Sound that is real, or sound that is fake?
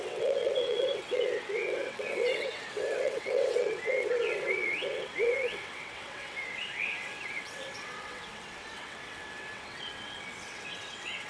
fake